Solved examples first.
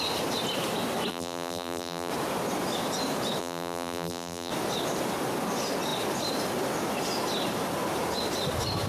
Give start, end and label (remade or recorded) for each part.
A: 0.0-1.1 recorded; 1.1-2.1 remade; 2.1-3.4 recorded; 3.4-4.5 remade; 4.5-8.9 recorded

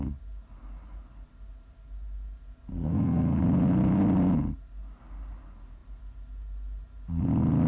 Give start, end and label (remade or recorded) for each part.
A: 0.0-2.7 recorded; 2.7-3.4 remade; 3.4-7.7 recorded

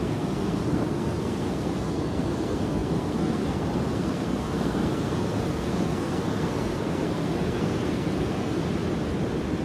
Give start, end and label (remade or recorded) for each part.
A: 0.0-8.6 remade; 8.6-9.6 recorded

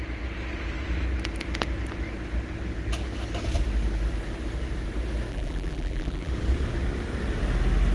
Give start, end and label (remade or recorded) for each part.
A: 0.0-5.3 recorded; 5.3-6.3 remade; 6.3-7.9 recorded

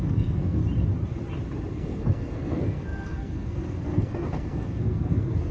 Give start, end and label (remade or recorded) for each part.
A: 0.0-0.6 remade; 0.6-1.7 recorded; 1.7-5.5 remade

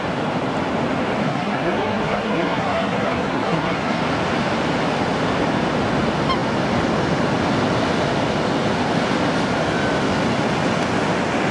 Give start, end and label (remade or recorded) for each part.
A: 0.0-1.2 recorded; 1.2-4.0 remade; 4.0-11.5 recorded